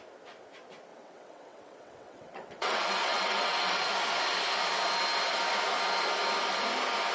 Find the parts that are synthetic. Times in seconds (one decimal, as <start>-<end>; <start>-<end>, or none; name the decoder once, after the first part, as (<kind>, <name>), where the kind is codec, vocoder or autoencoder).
0.9-3.8 (vocoder, WaveNeXt)